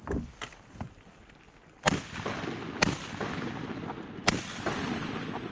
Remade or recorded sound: recorded